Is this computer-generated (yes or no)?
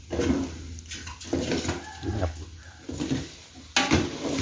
no